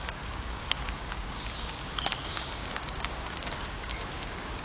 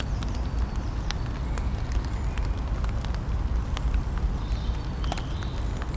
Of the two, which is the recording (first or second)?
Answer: second